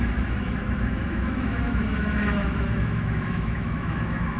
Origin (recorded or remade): remade